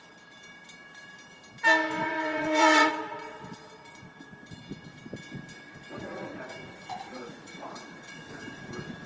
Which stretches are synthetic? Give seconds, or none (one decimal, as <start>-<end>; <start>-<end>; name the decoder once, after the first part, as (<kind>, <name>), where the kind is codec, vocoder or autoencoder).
2.0-2.9 (vocoder, Vocos); 6.0-8.7